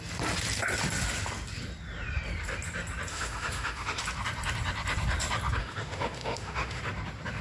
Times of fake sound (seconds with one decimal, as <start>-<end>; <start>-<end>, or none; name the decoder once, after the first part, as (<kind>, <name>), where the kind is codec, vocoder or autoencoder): 3.1-4.0 (autoencoder, DAC-VAE); 5.6-6.8